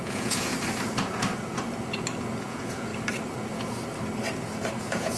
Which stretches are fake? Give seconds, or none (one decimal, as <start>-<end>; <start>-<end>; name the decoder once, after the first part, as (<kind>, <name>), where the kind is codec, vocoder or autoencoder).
0.0-0.5 (vocoder, Vocos); 2.4-2.9; 4.8-5.2